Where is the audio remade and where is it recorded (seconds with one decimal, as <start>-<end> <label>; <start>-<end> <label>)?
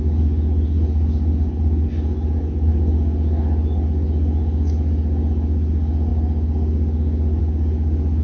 0.0-8.2 recorded